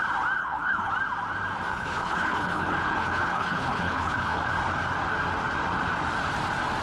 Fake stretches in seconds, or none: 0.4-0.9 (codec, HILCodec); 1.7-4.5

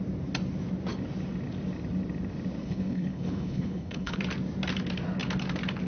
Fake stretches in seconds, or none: 2.6-4.2 (codec, HILCodec)